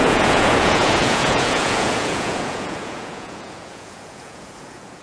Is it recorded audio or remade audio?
remade